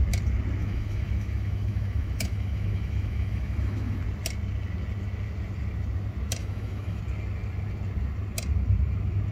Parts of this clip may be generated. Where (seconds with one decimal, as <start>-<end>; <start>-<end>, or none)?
0.6-4.0; 6.4-7.0